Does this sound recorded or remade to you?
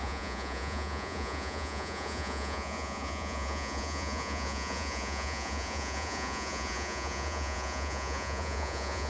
remade